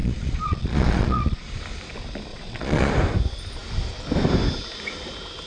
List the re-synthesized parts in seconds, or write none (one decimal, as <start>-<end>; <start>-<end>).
0.0-1.5; 2.3-2.9